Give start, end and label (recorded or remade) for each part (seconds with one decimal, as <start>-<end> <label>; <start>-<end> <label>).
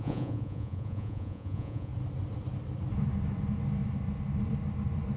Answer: 0.0-1.9 remade; 1.9-5.2 recorded